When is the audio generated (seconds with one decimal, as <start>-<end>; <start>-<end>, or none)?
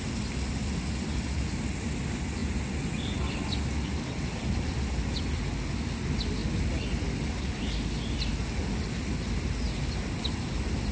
none